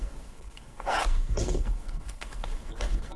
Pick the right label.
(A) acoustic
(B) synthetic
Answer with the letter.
B